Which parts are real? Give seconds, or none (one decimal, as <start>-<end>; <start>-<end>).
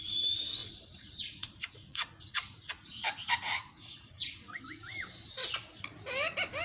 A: 0.0-0.6; 4.6-6.6